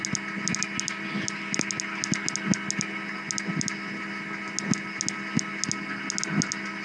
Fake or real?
real